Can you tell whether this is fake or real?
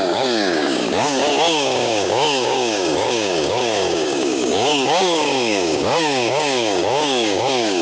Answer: fake